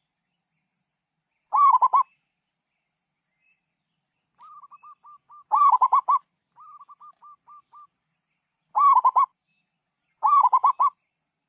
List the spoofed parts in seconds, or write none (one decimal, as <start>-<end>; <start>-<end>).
none